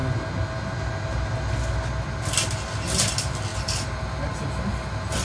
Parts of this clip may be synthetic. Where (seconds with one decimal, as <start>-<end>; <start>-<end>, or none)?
none